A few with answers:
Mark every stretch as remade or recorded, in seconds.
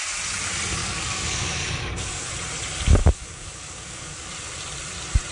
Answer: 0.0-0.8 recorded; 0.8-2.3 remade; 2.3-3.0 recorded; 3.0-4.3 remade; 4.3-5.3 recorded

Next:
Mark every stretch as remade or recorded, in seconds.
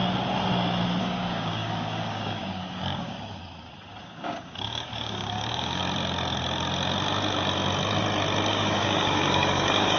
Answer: 0.0-1.0 recorded; 1.0-3.4 remade; 3.4-4.0 recorded; 4.0-5.8 remade; 5.8-8.5 recorded; 8.5-10.0 remade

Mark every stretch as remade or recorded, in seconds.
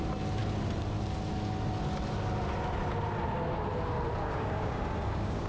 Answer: 0.0-4.2 recorded; 4.2-5.5 remade